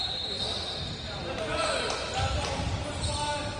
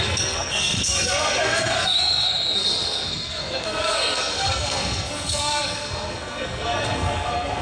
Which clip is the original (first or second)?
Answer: first